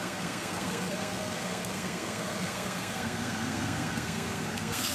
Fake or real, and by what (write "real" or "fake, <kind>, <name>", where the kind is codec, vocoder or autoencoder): fake, codec, SNAC